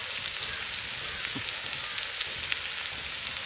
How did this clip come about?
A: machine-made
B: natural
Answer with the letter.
B